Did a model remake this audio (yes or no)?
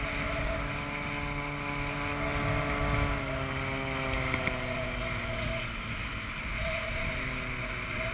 no